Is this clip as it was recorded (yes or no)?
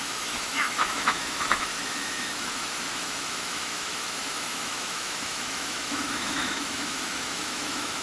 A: no